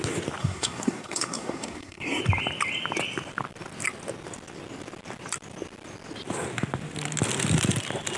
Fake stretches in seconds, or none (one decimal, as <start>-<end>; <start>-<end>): 0.4-2.2